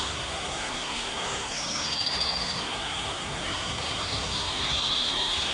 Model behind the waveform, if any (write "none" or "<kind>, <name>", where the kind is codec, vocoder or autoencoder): codec, SNAC